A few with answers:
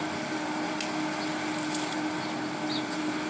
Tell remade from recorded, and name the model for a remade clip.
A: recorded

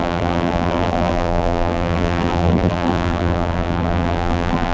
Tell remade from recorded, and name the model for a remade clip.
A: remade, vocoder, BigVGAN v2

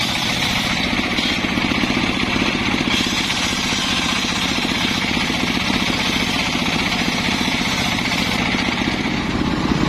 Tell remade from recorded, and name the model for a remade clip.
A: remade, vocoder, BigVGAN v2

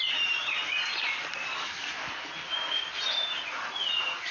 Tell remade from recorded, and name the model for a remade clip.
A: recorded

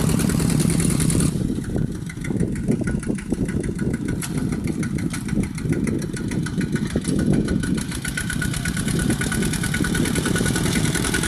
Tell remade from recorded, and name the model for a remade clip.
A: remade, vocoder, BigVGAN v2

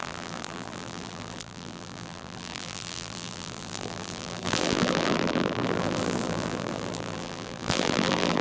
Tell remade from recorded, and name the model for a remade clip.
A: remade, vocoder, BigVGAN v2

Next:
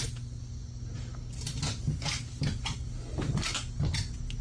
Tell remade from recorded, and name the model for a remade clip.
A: recorded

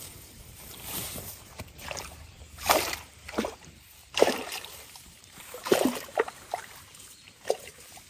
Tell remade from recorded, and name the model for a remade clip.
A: remade, vocoder, BigVGAN v2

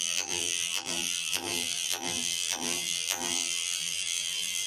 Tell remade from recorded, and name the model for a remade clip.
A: remade, vocoder, BigVGAN v2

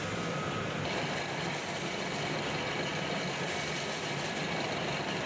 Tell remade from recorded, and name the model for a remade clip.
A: recorded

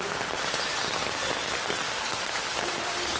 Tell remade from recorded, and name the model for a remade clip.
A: remade, vocoder, BigVGAN v2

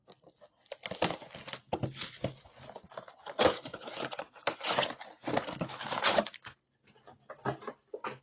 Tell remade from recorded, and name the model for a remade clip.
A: recorded